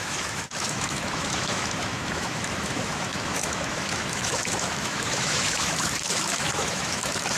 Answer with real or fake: fake